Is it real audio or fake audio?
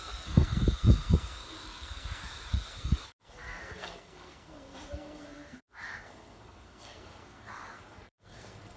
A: fake